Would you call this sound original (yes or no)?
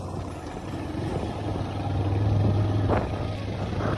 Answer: yes